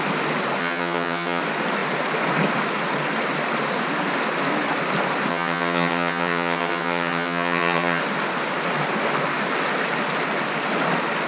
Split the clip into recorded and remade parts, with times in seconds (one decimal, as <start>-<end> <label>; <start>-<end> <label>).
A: 0.0-0.6 recorded; 0.6-1.4 remade; 1.4-5.3 recorded; 5.3-8.0 remade; 8.0-11.3 recorded